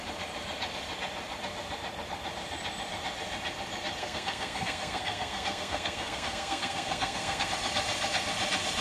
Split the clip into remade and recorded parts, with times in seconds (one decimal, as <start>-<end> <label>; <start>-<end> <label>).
0.0-4.0 recorded; 4.0-7.5 remade; 7.5-8.8 recorded

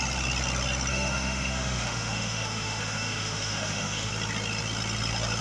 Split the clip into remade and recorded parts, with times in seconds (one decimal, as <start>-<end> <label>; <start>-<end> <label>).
0.0-0.9 recorded; 0.9-4.1 remade; 4.1-5.4 recorded

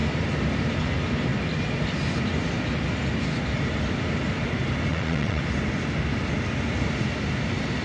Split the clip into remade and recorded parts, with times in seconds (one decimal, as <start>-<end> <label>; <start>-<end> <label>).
0.0-4.9 recorded; 4.9-5.4 remade; 5.4-7.8 recorded

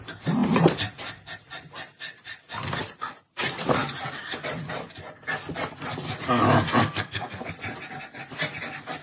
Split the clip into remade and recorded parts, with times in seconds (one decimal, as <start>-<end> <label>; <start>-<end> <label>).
0.0-6.8 recorded; 6.8-7.5 remade; 7.5-9.0 recorded

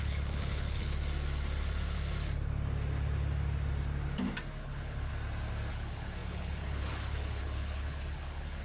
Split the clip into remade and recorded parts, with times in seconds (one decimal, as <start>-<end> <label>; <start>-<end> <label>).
0.0-1.0 remade; 1.0-4.6 recorded; 4.6-5.1 remade; 5.1-5.7 recorded; 5.7-8.6 remade

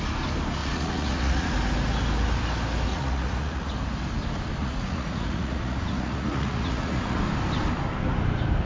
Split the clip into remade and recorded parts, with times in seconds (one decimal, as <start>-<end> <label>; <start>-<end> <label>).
0.0-0.6 recorded; 0.6-1.5 remade; 1.5-2.9 recorded; 2.9-3.7 remade; 3.7-4.6 recorded; 4.6-7.2 remade; 7.2-8.7 recorded

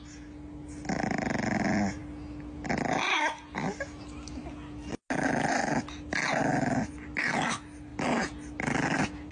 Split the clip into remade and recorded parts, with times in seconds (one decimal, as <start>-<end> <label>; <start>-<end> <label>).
0.0-9.3 recorded